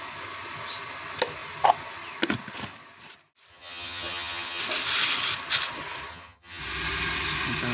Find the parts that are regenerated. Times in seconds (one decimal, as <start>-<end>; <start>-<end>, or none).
3.5-4.6; 6.1-6.6